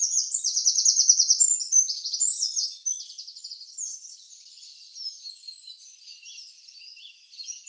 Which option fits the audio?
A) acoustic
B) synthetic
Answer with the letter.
A